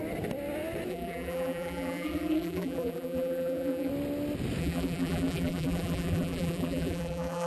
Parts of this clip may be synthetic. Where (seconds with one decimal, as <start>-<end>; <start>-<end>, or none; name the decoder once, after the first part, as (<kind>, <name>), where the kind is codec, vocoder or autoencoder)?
0.9-3.9 (vocoder, BigVGAN v2); 4.6-7.5